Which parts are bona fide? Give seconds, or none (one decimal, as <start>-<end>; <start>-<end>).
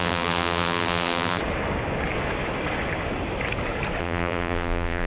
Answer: 1.4-4.0